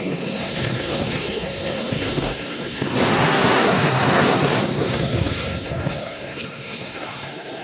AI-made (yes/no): yes